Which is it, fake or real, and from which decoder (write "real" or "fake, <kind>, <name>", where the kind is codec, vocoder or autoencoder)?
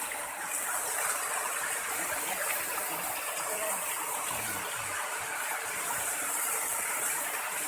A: fake, vocoder, BigVGAN v2